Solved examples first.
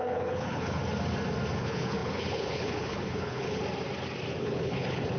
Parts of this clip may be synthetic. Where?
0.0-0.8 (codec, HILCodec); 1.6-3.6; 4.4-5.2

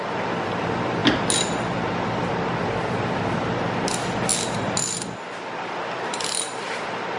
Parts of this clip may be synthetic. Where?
none

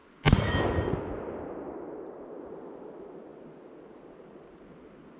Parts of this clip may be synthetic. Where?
none

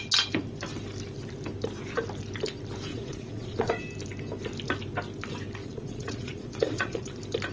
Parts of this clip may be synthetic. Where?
2.9-3.8 (vocoder, Vocos); 5.6-7.1

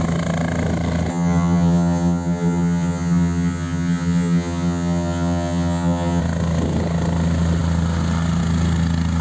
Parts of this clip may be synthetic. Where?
1.1-6.2 (vocoder, HiFi-GAN)